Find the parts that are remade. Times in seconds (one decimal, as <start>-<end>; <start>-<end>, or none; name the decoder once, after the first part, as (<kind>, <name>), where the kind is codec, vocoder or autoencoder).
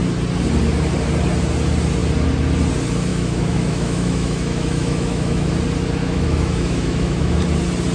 3.1-5.5 (autoencoder, DAC-VAE); 6.0-7.4